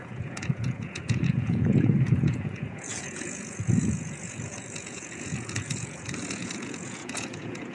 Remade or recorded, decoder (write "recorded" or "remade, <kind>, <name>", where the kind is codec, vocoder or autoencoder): remade, vocoder, Vocos